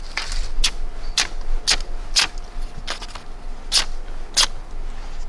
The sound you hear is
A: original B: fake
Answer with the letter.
A